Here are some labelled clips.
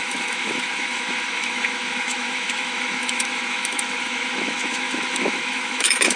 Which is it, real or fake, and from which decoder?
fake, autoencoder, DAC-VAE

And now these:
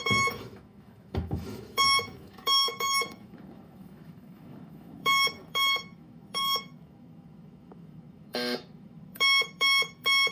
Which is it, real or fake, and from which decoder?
fake, autoencoder, DAC-VAE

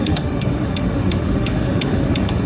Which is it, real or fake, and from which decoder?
fake, autoencoder, DAC-VAE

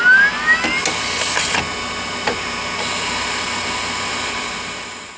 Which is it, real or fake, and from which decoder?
real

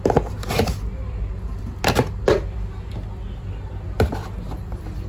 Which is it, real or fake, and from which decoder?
real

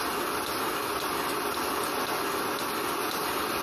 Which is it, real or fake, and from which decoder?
real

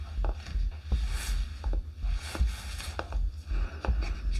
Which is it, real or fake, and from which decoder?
real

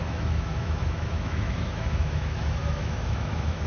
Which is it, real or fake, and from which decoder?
fake, autoencoder, DAC-VAE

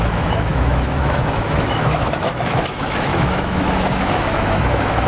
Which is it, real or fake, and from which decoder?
fake, autoencoder, DAC-VAE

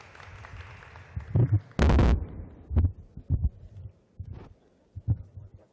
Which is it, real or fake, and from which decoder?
real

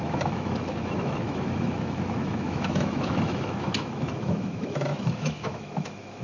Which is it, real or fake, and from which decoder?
fake, autoencoder, DAC-VAE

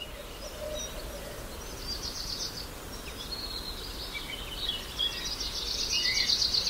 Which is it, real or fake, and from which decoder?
real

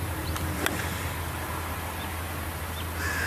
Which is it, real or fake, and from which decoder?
real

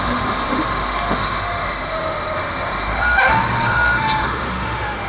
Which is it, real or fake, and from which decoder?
fake, autoencoder, DAC-VAE